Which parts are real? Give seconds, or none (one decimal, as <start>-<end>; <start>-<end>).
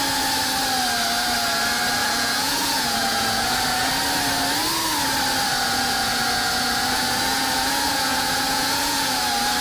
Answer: 0.0-2.0; 3.9-5.5; 9.2-9.6